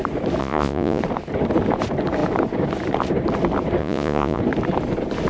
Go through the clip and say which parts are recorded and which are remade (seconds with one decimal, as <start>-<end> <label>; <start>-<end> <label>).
0.0-0.4 recorded; 0.4-1.0 remade; 1.0-3.8 recorded; 3.8-4.4 remade; 4.4-5.3 recorded